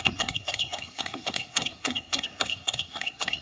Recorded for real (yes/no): no